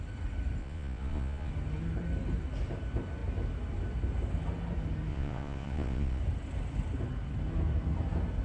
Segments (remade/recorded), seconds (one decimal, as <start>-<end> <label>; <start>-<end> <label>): 0.0-0.6 recorded; 0.6-1.5 remade; 1.5-5.1 recorded; 5.1-6.2 remade; 6.2-8.4 recorded